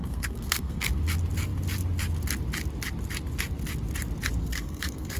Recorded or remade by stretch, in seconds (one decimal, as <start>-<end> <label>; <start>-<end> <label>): 0.0-1.0 remade; 1.0-4.4 recorded; 4.4-5.2 remade